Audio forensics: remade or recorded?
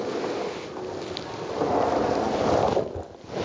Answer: recorded